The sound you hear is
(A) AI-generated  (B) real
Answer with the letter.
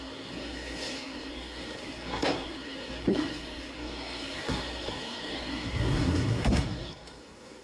A